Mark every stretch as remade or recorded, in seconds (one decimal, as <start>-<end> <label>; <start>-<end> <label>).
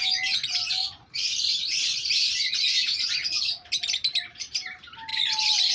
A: 0.0-0.8 recorded; 0.8-2.3 remade; 2.3-2.8 recorded; 2.8-3.5 remade; 3.5-5.1 recorded; 5.1-5.7 remade